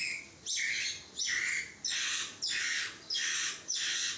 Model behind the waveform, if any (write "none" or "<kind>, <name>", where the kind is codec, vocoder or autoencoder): none